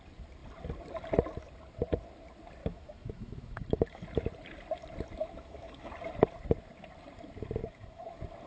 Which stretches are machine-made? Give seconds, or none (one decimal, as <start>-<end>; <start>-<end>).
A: 2.6-4.0; 5.2-5.9; 7.6-8.1